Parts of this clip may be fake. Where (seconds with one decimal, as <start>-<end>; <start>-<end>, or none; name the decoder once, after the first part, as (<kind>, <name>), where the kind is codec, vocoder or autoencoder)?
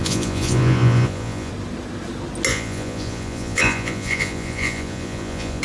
0.0-1.5 (vocoder, Vocos); 2.5-5.6